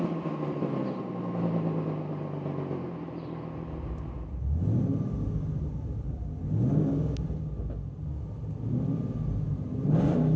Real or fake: real